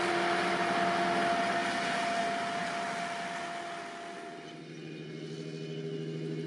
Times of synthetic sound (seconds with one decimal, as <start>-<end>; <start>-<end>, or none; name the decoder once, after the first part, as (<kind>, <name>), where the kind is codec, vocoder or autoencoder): none